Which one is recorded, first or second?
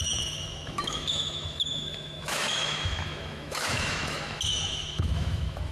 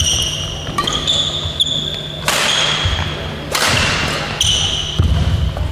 second